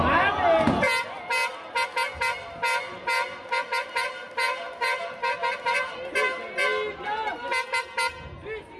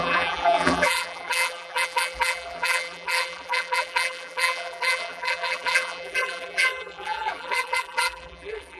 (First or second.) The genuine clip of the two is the first